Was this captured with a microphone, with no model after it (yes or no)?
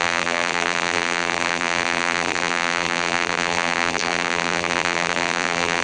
no